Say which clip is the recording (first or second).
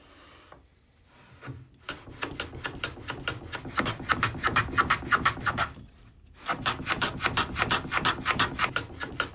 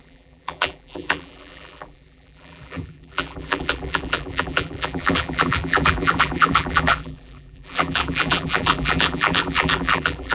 first